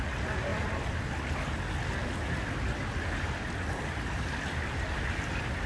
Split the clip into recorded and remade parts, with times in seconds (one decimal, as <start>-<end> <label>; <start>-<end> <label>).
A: 0.0-5.7 recorded